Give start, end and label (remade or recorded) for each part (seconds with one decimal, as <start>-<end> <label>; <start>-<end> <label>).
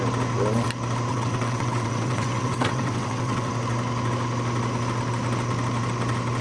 0.0-1.1 recorded; 1.1-3.5 remade; 3.5-6.4 recorded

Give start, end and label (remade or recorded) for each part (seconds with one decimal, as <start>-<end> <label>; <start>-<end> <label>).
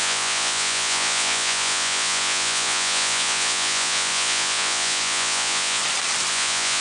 0.0-5.8 remade; 5.8-6.3 recorded; 6.3-6.8 remade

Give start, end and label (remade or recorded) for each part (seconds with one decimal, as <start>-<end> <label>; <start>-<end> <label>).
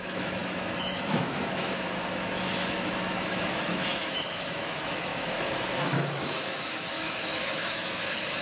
0.0-8.4 remade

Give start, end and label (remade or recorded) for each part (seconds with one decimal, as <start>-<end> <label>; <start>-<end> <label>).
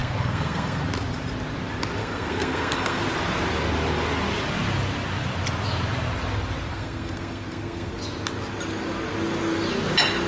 0.0-0.8 remade; 0.8-2.0 recorded; 2.0-3.0 remade; 3.0-6.7 recorded; 6.7-7.9 remade; 7.9-10.3 recorded